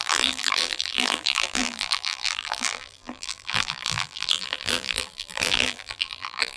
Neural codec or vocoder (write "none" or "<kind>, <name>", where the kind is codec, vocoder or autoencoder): vocoder, BigVGAN v2